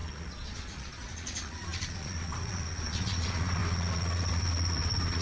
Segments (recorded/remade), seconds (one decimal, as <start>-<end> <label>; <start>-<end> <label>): 0.0-5.2 remade